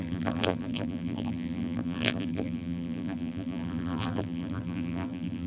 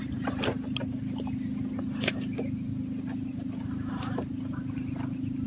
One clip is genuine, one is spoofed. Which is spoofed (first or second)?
first